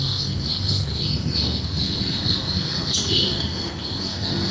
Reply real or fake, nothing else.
fake